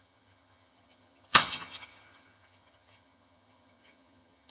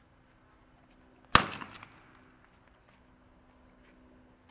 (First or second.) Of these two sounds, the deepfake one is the first